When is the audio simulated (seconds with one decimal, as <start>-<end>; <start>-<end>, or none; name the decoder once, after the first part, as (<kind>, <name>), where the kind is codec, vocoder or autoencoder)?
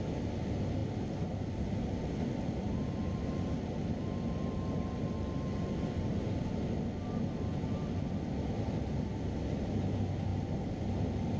none